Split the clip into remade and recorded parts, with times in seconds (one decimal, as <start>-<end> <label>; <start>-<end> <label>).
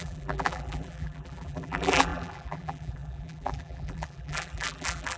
0.0-5.2 remade